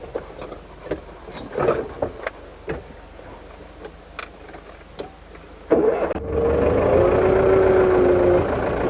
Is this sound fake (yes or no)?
no